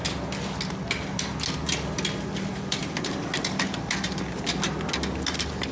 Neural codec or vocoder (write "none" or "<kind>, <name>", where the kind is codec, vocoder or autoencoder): none